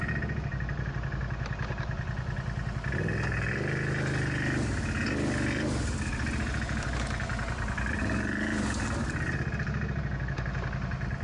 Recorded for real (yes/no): yes